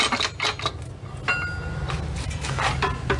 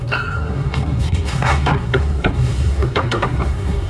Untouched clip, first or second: first